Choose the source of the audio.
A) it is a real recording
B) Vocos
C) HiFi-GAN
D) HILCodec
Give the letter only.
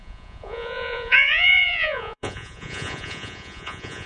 B